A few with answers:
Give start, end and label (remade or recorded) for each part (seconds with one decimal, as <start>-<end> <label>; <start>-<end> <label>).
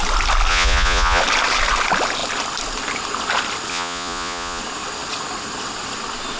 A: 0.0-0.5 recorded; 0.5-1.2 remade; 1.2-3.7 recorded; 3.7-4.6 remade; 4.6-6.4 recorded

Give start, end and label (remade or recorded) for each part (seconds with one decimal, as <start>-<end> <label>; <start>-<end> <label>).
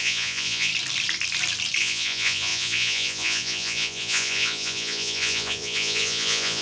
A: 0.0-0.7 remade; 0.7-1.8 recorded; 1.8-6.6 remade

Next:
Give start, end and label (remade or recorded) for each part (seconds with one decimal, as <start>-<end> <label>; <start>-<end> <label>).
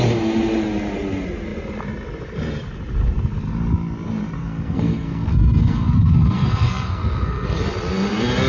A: 0.0-4.4 recorded; 4.4-7.6 remade; 7.6-8.5 recorded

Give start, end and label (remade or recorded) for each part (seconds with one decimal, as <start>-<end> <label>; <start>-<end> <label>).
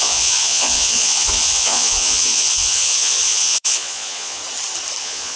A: 0.0-4.4 remade; 4.4-5.0 recorded; 5.0-5.4 remade